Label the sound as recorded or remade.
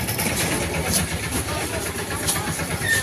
recorded